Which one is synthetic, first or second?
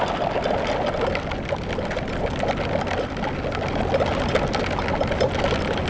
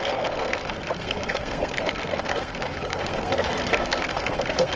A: second